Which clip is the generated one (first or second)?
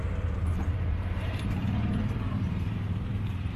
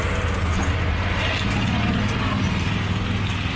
first